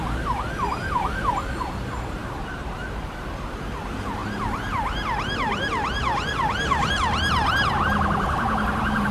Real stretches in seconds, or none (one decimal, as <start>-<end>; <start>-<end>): none